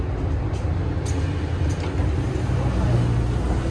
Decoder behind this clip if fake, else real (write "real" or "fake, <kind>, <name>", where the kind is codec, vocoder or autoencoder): real